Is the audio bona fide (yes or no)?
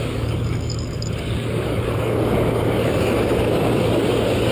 no